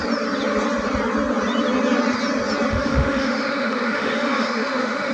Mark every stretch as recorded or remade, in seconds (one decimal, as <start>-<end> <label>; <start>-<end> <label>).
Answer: 0.0-2.7 recorded; 2.7-5.1 remade